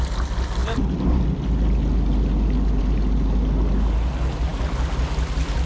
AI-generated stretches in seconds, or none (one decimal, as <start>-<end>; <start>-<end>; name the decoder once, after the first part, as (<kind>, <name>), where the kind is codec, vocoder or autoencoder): none